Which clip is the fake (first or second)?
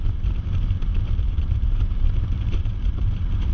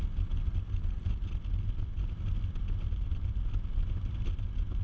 first